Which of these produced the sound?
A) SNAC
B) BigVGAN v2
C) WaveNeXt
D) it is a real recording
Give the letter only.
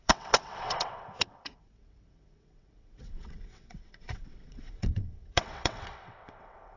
C